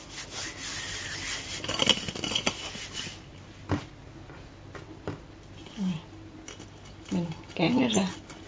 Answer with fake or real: real